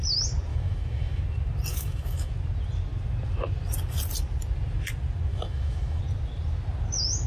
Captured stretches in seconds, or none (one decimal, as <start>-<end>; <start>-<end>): 0.0-0.5; 1.2-1.7; 2.3-5.3; 6.0-7.3